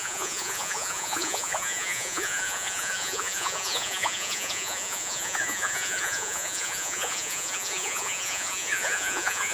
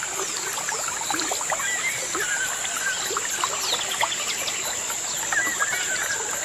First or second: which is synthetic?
first